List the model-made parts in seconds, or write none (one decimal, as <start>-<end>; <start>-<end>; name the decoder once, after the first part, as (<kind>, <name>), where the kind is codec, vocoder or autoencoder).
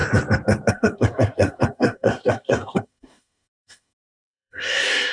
0.7-5.1 (codec, SNAC)